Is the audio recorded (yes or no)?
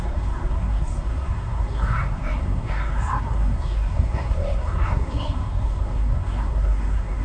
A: no